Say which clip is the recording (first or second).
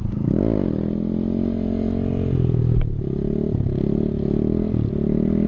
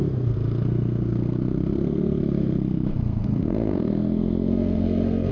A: first